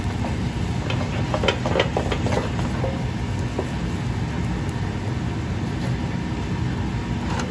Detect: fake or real real